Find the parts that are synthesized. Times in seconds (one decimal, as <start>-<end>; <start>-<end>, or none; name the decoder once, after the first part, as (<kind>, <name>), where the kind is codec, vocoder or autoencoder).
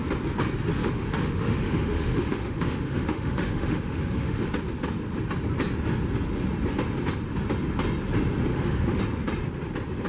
0.8-4.4 (autoencoder, DAC-VAE); 8.5-9.0